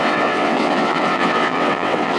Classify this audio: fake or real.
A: fake